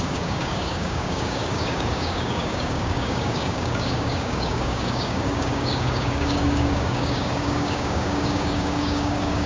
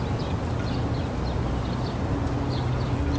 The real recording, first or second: second